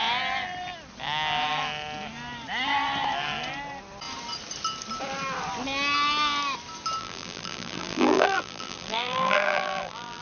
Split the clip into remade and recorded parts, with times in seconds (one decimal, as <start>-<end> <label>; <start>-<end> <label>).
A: 0.0-7.0 recorded; 7.0-10.2 remade